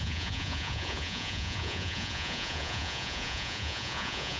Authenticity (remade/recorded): remade